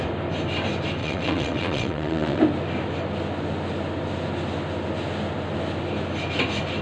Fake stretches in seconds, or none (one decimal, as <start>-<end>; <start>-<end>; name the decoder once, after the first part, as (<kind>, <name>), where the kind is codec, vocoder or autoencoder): 1.0-2.4 (vocoder, WaveNeXt)